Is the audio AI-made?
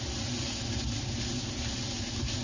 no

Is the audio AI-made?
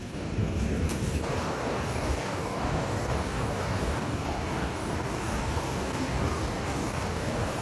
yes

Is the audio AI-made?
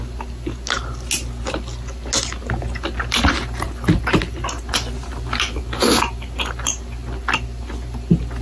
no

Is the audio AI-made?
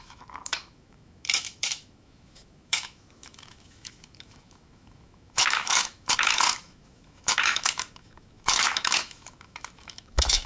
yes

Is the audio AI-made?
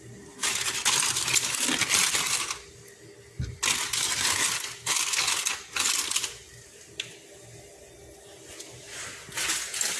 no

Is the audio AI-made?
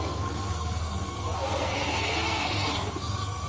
yes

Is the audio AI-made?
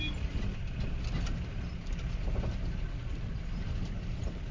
no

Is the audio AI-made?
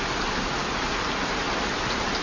no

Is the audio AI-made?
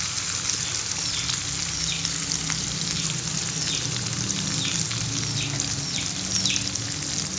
no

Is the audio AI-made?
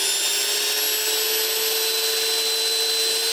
no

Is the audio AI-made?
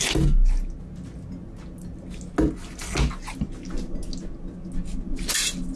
no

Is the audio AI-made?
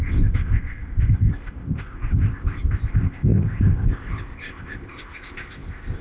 yes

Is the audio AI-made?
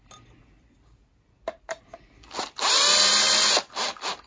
no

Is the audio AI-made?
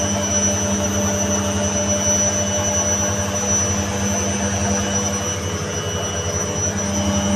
no